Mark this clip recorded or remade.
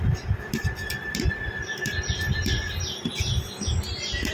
recorded